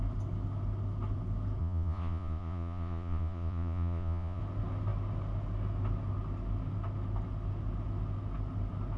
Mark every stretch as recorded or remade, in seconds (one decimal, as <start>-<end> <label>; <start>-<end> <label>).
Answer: 0.0-1.6 recorded; 1.6-4.4 remade; 4.4-9.0 recorded